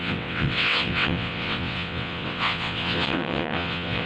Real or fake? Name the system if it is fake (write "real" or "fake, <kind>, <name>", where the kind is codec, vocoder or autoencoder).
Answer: fake, vocoder, WaveNeXt